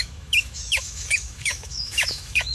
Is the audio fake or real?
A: fake